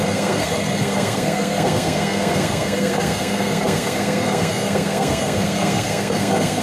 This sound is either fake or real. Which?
fake